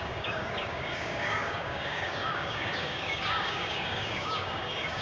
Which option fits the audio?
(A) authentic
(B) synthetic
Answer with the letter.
B